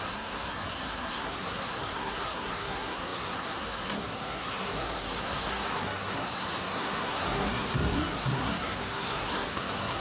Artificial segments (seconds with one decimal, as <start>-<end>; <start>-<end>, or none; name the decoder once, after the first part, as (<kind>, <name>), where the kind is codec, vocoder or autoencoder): 0.0-10.0 (codec, SNAC)